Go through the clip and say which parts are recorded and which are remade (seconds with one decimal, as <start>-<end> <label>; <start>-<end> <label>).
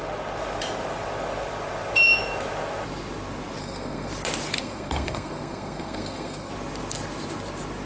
0.0-3.6 recorded; 3.6-4.1 remade; 4.1-4.6 recorded; 4.6-6.5 remade; 6.5-7.9 recorded